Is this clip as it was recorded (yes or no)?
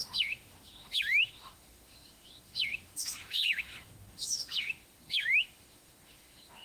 no